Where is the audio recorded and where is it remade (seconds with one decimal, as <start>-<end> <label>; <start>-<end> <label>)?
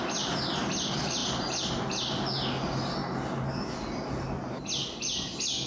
0.0-5.7 recorded